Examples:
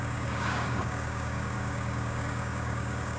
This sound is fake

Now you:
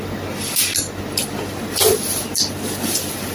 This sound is real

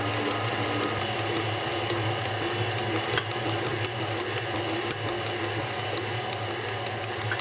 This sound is real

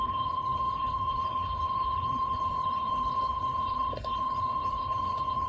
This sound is fake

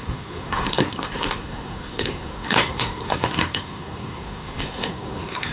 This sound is fake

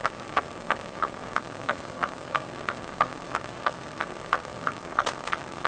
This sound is fake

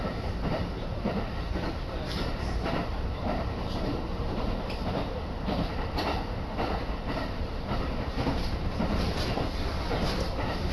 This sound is fake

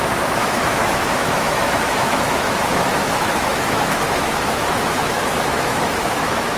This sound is fake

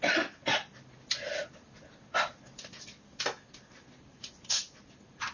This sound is real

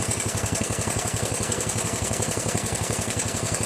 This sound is fake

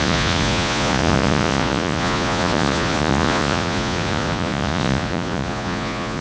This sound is fake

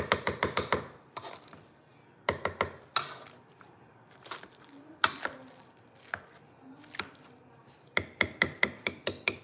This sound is real